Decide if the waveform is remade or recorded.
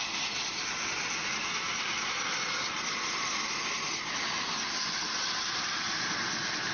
recorded